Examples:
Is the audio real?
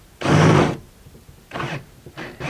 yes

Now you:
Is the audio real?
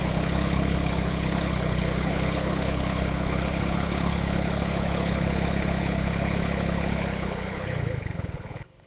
no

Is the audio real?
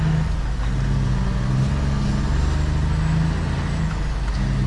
yes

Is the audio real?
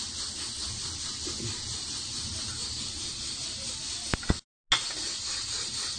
yes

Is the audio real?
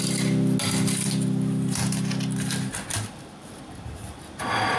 yes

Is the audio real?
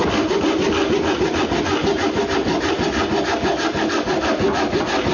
yes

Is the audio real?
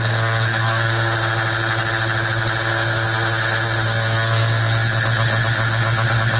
yes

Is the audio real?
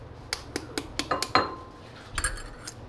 yes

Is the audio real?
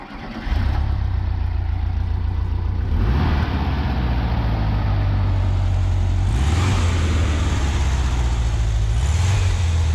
yes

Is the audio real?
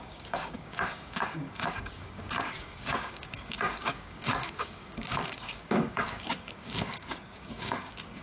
no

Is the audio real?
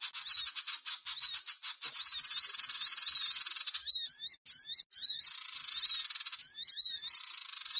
yes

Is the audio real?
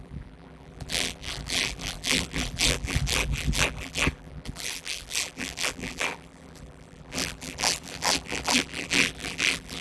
no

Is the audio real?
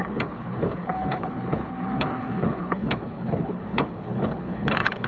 no